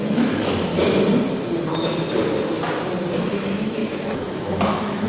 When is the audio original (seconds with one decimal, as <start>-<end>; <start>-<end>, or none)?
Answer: 0.7-3.2